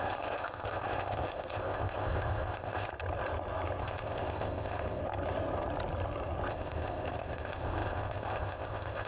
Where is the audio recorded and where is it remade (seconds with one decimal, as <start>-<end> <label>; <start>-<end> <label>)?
0.0-2.9 remade; 2.9-3.8 recorded; 3.8-5.0 remade; 5.0-6.5 recorded; 6.5-9.1 remade